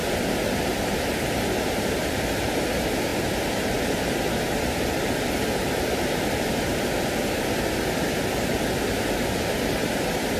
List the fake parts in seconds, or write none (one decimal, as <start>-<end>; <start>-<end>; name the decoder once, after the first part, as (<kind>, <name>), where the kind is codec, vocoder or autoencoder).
none